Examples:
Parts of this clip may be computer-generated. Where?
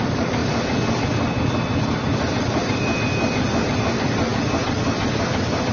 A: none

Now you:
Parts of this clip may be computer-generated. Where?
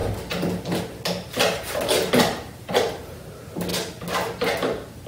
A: none